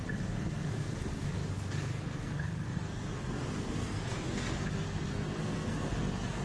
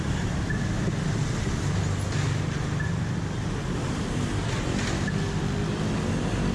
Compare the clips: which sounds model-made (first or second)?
first